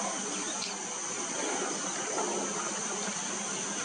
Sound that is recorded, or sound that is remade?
recorded